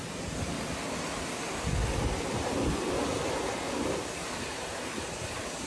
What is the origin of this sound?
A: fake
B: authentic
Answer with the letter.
B